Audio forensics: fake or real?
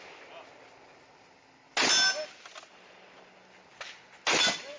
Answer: real